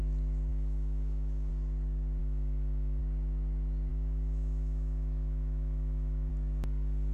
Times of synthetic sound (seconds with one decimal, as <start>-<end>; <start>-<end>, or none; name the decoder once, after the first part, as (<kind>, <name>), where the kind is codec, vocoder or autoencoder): 0.5-1.5 (autoencoder, DAC-VAE); 2.2-3.0; 3.9-6.3